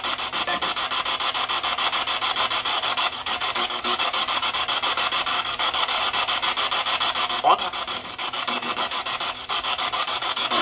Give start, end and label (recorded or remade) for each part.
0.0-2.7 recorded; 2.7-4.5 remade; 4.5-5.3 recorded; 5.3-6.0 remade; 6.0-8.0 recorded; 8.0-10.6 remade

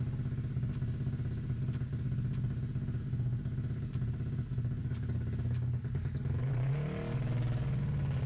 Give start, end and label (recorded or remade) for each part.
0.0-4.8 recorded; 4.8-7.8 remade; 7.8-8.3 recorded

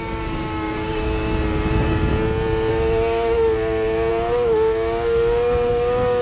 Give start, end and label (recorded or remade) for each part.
0.0-2.1 remade; 2.1-2.7 recorded; 2.7-6.2 remade

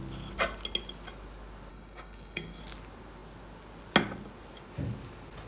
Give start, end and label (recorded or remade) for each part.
0.0-1.7 recorded; 1.7-2.6 remade; 2.6-5.5 recorded

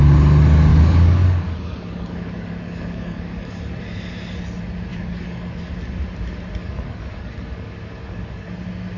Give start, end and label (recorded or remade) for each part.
0.0-0.7 recorded; 0.7-3.5 remade; 3.5-4.9 recorded; 4.9-5.6 remade; 5.6-6.6 recorded; 6.6-8.5 remade; 8.5-9.0 recorded

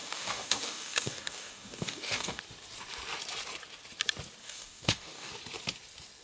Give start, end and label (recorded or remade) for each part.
0.0-2.4 remade; 2.4-4.4 recorded; 4.4-5.3 remade; 5.3-6.2 recorded